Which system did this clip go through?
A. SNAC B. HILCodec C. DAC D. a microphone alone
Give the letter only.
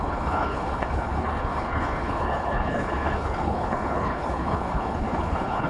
B